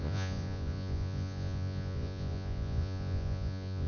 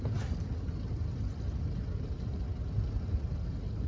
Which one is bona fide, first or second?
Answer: second